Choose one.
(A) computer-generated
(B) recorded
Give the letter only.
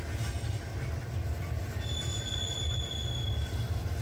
B